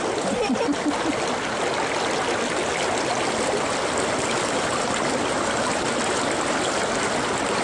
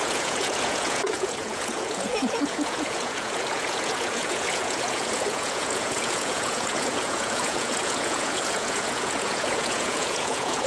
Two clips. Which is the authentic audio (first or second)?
first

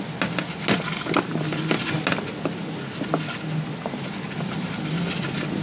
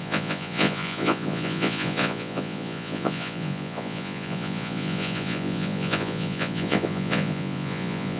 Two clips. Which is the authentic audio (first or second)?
first